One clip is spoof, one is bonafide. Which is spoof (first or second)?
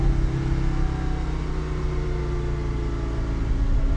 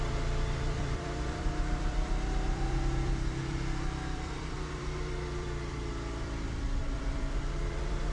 second